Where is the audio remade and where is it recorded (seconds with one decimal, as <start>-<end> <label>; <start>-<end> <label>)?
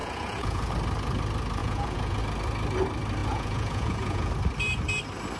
0.0-0.7 remade; 0.7-1.6 recorded; 1.6-2.2 remade; 2.2-3.2 recorded; 3.2-4.3 remade; 4.3-5.4 recorded